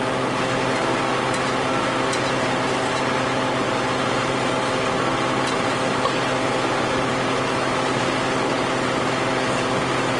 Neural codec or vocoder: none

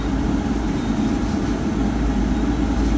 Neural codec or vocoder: none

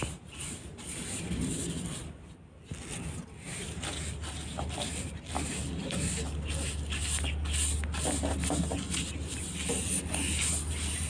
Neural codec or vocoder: none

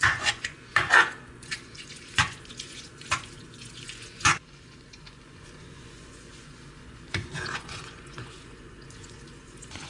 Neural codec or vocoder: vocoder, Vocos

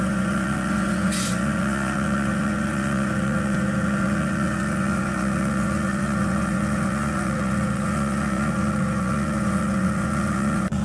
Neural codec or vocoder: vocoder, Vocos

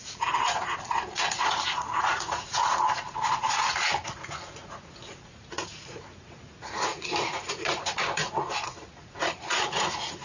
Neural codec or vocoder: vocoder, Vocos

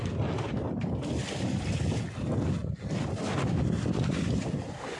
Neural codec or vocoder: none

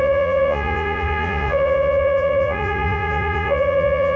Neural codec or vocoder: vocoder, Vocos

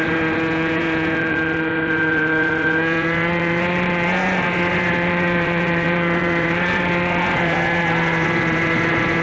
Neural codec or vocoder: vocoder, Vocos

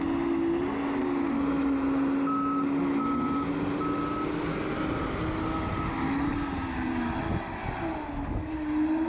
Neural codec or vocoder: none